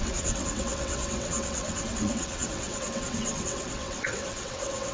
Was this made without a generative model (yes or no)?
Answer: no